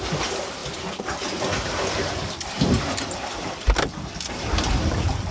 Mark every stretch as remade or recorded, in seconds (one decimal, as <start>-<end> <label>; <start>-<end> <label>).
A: 0.0-5.3 recorded